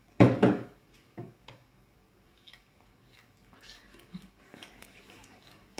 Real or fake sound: fake